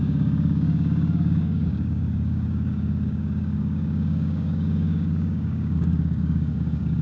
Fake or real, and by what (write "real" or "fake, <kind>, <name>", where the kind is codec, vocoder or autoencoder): fake, codec, DAC